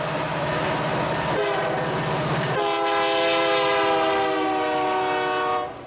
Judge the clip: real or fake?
real